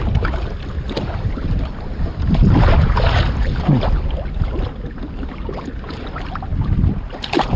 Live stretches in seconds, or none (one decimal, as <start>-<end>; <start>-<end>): 0.0-7.6